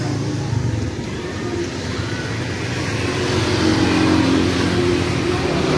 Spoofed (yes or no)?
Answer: no